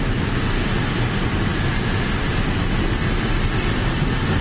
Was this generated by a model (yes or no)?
no